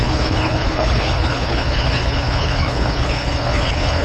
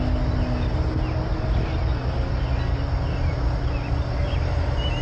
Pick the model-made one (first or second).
first